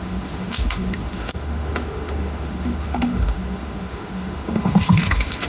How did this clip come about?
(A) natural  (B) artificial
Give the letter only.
B